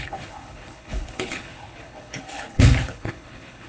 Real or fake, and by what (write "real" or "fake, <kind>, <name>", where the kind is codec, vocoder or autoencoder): fake, codec, HILCodec